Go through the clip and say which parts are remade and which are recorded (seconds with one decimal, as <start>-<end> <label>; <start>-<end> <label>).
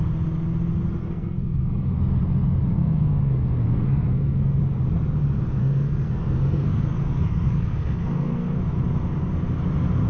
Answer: 0.0-1.0 recorded; 1.0-1.9 remade; 1.9-2.6 recorded; 2.6-4.6 remade; 4.6-5.6 recorded; 5.6-8.6 remade; 8.6-10.1 recorded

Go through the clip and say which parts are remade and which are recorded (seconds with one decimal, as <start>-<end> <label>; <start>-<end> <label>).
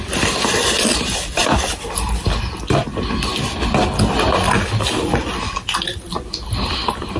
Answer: 0.0-7.2 recorded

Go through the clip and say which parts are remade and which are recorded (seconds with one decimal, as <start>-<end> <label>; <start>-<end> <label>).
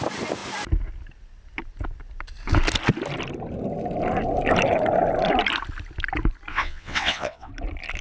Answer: 0.0-6.5 recorded; 6.5-7.5 remade; 7.5-8.0 recorded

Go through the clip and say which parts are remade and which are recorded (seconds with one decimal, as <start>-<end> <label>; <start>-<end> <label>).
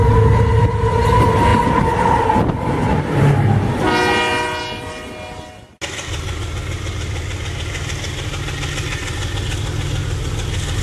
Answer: 0.0-10.8 recorded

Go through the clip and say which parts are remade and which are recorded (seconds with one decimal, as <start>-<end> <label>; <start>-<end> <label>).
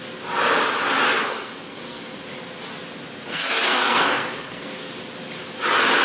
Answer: 0.0-1.2 recorded; 1.2-2.2 remade; 2.2-3.3 recorded; 3.3-4.9 remade; 4.9-6.0 recorded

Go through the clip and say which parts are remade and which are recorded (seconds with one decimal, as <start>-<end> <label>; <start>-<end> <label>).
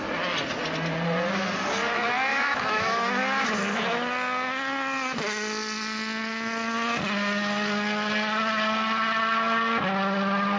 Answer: 0.0-2.3 recorded; 2.3-3.1 remade; 3.1-10.6 recorded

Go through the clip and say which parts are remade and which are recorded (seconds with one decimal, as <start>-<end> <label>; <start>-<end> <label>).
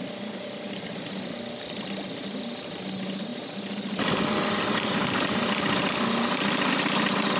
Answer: 0.0-7.4 recorded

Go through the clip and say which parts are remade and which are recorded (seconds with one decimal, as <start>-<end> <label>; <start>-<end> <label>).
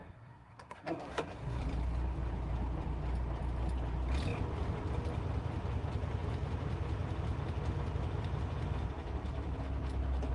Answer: 0.0-1.6 remade; 1.6-10.3 recorded